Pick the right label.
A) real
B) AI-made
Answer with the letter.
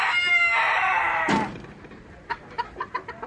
B